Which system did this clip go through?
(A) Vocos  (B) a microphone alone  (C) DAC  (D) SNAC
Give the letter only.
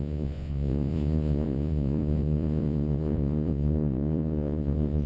A